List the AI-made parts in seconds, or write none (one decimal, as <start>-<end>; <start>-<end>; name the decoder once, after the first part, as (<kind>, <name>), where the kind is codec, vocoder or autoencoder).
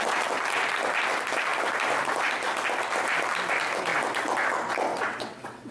4.9-5.7 (vocoder, WaveNeXt)